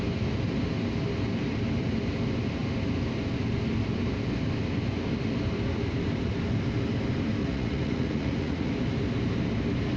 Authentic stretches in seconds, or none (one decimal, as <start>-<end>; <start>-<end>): 0.0-7.4; 8.7-10.0